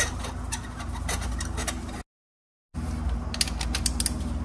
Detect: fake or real real